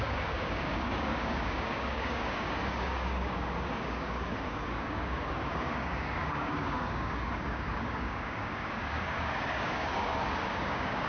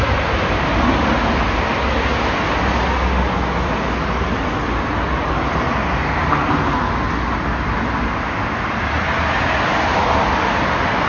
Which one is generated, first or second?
first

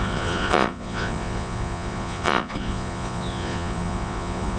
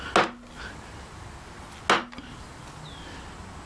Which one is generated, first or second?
first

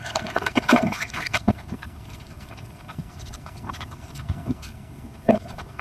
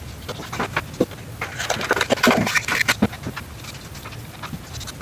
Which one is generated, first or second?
first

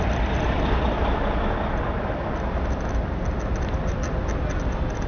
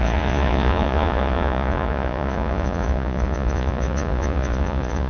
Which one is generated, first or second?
second